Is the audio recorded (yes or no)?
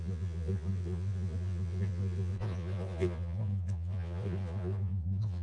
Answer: no